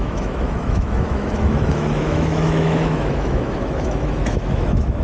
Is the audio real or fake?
fake